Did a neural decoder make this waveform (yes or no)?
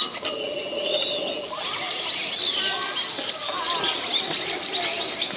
no